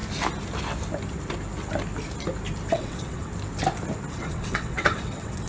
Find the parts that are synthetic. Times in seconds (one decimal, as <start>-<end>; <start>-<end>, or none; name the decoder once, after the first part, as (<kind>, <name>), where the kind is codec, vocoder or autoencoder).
2.7-3.3 (vocoder, WaveNeXt); 4.1-5.5